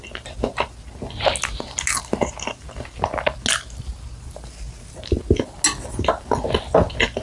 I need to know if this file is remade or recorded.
recorded